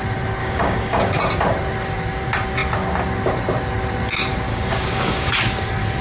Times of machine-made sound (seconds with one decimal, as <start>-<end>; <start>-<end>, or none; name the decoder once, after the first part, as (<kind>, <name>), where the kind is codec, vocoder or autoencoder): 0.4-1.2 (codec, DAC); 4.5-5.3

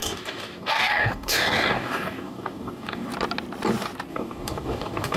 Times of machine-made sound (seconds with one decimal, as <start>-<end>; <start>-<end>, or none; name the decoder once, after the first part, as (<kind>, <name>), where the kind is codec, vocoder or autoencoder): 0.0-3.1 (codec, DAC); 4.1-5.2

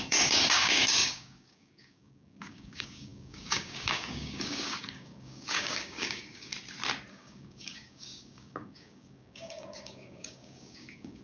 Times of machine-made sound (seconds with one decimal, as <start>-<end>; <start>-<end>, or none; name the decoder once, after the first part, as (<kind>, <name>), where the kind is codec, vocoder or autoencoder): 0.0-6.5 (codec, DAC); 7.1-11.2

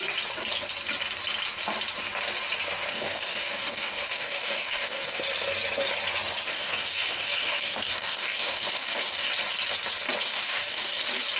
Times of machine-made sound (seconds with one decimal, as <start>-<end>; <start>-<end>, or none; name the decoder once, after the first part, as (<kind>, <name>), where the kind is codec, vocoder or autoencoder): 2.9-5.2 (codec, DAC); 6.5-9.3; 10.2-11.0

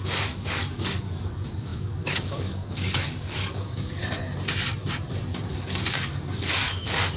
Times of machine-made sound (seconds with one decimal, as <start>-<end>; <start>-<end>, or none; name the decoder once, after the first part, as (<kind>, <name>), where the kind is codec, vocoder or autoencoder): 0.0-4.0 (codec, DAC); 5.5-7.2